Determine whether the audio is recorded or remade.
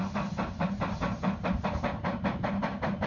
recorded